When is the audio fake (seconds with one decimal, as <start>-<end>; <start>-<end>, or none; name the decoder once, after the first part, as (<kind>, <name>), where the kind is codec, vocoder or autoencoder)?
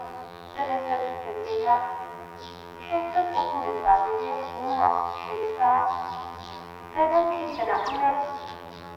0.0-7.5 (vocoder, BigVGAN v2); 8.1-9.0